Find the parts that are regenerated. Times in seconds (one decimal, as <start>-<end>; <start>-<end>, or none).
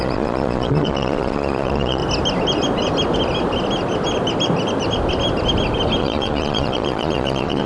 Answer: 0.0-2.0; 6.0-7.7